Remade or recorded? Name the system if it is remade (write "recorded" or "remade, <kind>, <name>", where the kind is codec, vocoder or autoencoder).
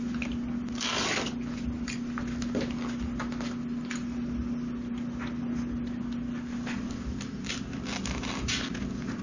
recorded